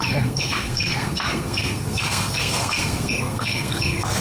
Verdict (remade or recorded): remade